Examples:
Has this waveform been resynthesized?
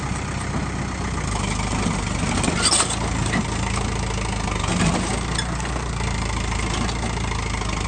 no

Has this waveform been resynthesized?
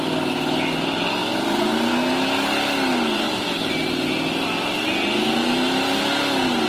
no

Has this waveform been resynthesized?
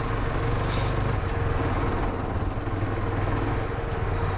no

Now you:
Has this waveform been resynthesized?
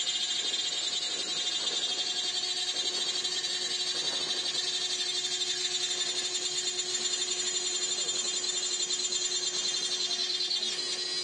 no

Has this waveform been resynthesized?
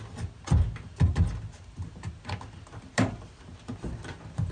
no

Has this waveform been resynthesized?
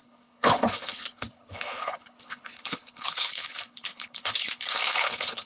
yes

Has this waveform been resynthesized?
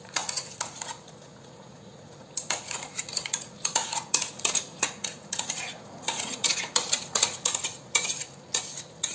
yes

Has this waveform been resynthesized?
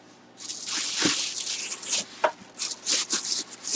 no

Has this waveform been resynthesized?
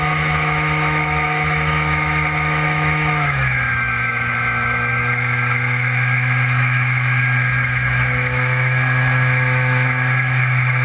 yes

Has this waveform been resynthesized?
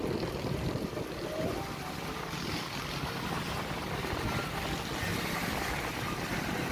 no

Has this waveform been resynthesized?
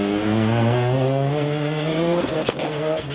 yes